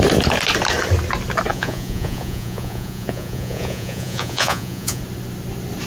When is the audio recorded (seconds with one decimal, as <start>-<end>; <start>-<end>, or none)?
0.0-1.5; 5.0-5.9